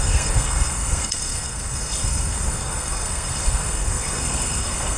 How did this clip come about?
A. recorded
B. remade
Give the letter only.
B